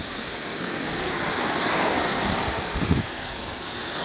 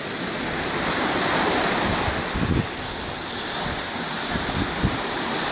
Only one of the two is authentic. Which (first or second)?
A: second